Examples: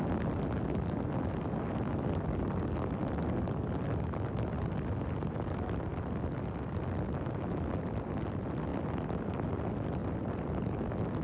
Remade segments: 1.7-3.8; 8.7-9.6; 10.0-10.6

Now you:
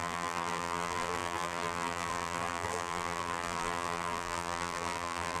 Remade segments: 0.0-5.4

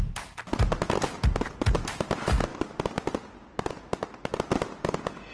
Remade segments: none

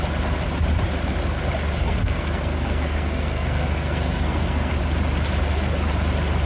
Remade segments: 1.8-4.7